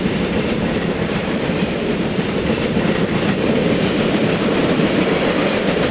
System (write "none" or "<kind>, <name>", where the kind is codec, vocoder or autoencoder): vocoder, BigVGAN v2